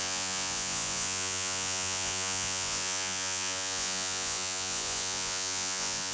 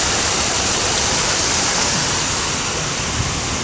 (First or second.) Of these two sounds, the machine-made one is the first